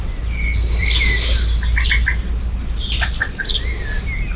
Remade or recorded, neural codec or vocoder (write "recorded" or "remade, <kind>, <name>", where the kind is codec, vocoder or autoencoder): recorded